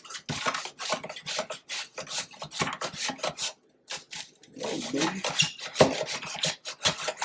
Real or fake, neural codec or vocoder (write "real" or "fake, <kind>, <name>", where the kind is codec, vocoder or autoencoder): real